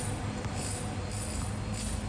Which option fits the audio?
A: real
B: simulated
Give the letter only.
A